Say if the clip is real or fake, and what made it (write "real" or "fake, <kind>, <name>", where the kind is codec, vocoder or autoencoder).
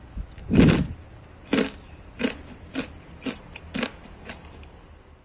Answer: fake, vocoder, BigVGAN v2